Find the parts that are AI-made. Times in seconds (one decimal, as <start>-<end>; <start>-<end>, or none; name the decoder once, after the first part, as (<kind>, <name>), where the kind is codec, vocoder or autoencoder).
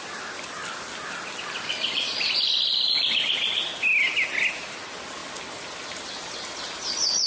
none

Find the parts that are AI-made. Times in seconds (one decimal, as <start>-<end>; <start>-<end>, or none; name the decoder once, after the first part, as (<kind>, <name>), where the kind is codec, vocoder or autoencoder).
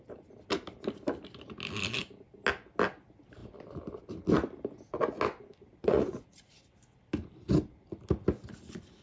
5.8-6.5 (vocoder, Vocos)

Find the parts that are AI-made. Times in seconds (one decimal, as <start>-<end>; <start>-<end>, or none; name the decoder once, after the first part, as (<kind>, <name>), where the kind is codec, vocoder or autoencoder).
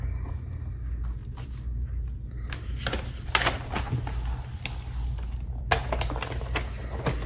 none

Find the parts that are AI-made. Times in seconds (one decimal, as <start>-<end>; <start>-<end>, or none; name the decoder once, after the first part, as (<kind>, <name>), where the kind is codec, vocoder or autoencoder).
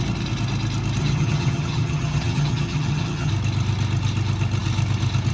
1.0-3.3 (vocoder, HiFi-GAN)